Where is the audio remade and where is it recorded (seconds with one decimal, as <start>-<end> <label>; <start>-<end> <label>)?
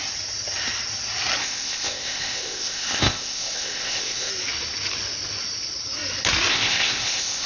0.0-1.4 recorded; 1.4-4.3 remade; 4.3-6.5 recorded; 6.5-7.5 remade